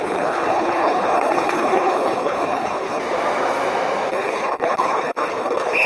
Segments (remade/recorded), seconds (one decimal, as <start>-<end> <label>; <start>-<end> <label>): 0.0-3.0 remade; 3.0-4.1 recorded; 4.1-5.9 remade